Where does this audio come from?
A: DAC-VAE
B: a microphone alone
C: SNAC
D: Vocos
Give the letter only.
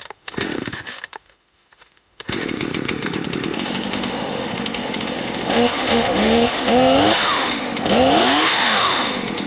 A